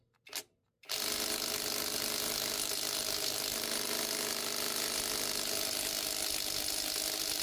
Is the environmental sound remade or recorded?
recorded